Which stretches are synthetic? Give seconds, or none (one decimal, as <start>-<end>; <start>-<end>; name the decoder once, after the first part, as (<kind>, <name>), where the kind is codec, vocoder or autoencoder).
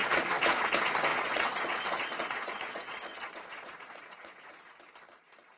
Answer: 0.0-0.7 (vocoder, Vocos); 1.1-4.5